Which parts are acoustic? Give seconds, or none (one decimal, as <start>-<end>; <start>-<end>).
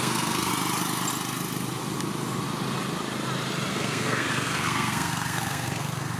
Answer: 0.5-3.7